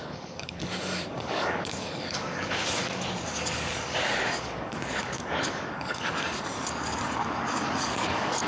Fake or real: fake